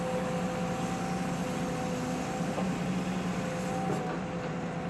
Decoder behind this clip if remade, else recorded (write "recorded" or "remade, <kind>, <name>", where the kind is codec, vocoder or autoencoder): recorded